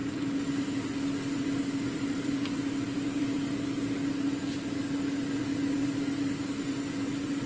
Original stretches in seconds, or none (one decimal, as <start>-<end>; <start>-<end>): 0.0-7.5